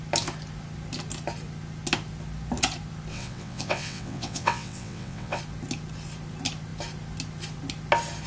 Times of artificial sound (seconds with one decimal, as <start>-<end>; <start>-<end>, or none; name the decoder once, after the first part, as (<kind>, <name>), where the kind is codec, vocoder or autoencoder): 3.1-5.4 (vocoder, WaveNeXt)